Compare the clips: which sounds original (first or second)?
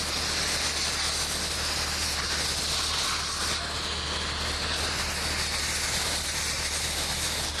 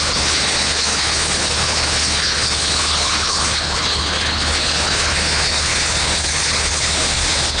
first